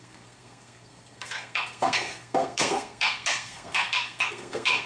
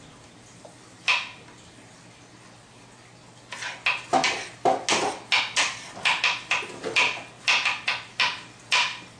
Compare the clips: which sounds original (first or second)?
second